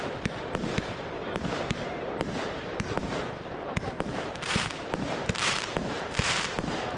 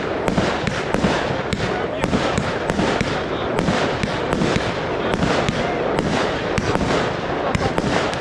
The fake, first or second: first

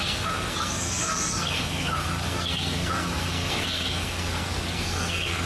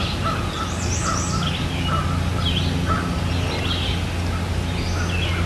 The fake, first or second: first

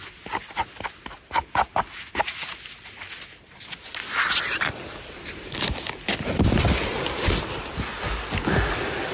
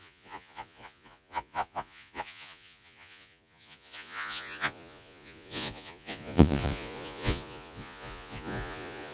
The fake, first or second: second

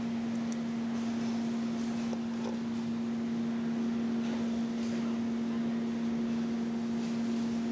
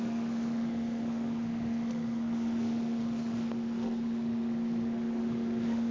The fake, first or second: second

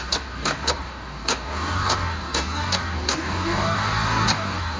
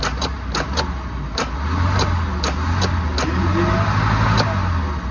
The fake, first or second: first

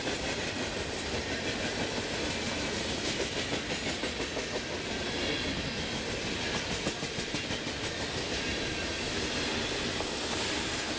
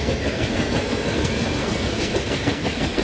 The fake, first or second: second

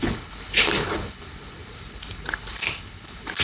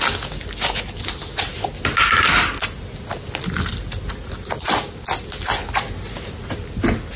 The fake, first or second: first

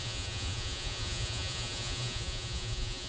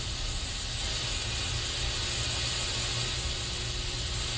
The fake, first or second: first